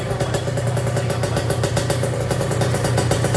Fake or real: real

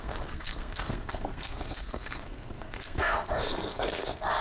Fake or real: fake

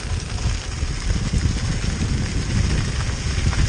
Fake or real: real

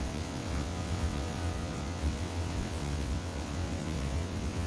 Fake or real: fake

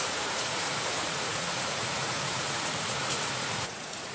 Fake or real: fake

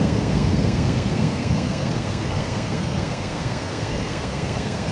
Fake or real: fake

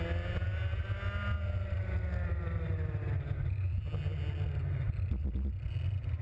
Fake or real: real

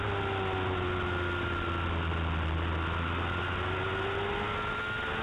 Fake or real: real